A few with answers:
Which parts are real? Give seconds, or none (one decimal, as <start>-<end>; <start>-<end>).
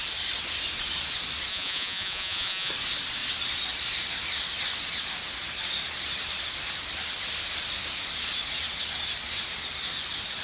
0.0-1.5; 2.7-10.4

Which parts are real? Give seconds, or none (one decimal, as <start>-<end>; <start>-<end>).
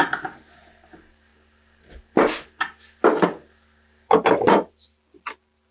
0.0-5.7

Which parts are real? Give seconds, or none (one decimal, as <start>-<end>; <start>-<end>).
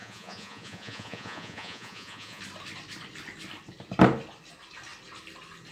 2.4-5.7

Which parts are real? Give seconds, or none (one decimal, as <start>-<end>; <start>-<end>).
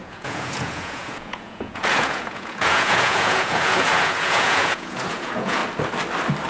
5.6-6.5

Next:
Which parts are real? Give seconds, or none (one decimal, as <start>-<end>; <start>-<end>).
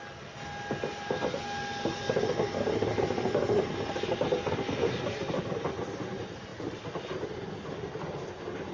0.0-8.7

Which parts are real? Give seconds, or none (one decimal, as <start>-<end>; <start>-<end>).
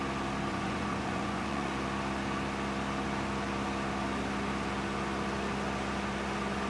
0.0-0.5; 1.7-6.7